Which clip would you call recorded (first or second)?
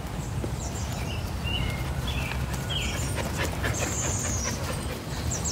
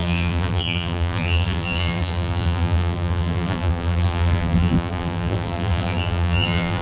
first